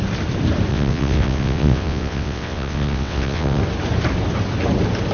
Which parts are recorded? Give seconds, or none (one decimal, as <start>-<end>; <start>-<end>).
0.0-0.7; 3.6-5.1